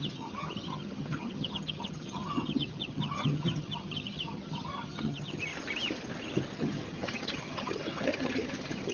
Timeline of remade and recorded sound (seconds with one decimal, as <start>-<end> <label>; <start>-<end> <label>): 0.0-5.5 remade; 5.5-6.5 recorded; 6.5-8.9 remade